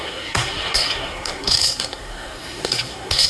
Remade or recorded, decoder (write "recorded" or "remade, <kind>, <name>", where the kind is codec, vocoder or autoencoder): remade, codec, SNAC